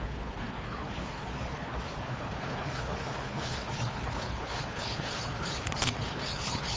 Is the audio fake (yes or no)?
yes